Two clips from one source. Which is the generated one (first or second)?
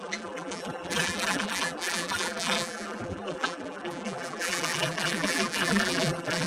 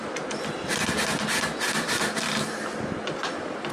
first